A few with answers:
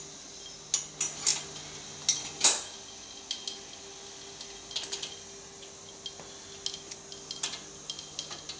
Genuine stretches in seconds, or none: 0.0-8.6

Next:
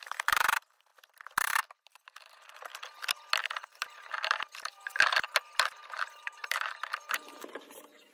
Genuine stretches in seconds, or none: 0.9-1.4; 2.7-3.6

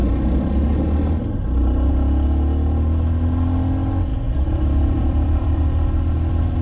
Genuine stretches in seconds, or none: 0.0-4.1; 5.6-6.6

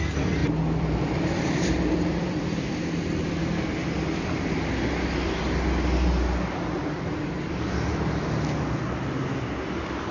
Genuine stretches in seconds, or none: 0.0-0.4; 2.8-10.1

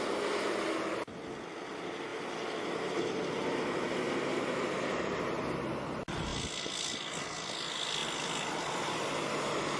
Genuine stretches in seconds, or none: 0.0-8.0; 9.1-9.8

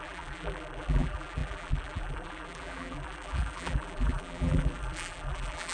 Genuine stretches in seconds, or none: none

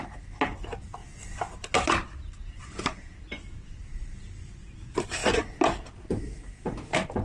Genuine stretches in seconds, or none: 1.0-4.4